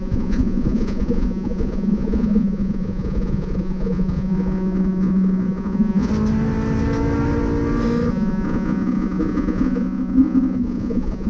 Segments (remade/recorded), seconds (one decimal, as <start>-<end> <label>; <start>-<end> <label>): 0.0-6.1 remade; 6.1-8.1 recorded; 8.1-11.3 remade